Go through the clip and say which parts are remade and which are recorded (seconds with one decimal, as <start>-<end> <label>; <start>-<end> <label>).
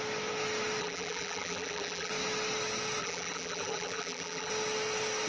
0.0-0.8 recorded; 0.8-2.1 remade; 2.1-3.0 recorded; 3.0-4.5 remade; 4.5-5.3 recorded